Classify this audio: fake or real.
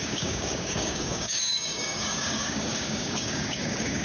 fake